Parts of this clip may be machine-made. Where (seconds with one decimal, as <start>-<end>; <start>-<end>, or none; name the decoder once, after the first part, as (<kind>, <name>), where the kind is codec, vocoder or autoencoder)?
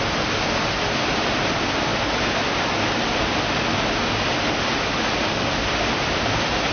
none